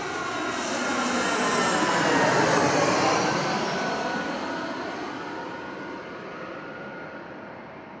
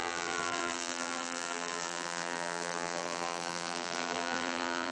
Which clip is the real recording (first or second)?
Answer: first